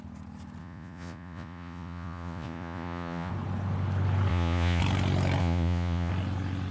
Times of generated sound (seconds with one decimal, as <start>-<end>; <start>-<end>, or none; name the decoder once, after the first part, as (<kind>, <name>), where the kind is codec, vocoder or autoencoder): 0.6-3.3 (vocoder, Vocos); 4.3-4.8; 5.4-6.1